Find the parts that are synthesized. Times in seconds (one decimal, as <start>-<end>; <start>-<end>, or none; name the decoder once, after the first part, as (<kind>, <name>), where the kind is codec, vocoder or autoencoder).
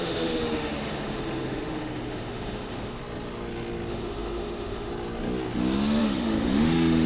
0.0-3.0 (autoencoder, DAC-VAE); 3.9-4.9; 6.0-7.1